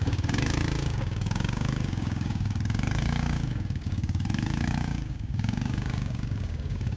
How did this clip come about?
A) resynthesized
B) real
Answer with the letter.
A